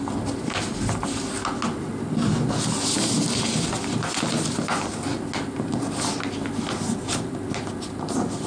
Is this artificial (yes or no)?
no